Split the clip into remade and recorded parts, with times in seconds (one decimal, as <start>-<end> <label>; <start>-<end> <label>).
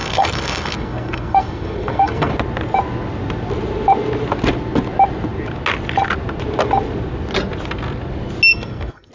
0.0-2.3 remade; 2.3-8.5 recorded; 8.5-9.1 remade